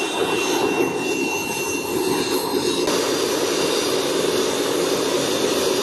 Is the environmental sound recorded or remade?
recorded